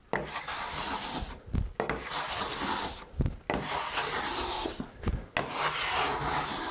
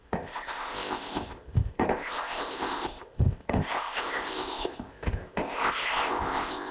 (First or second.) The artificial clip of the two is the second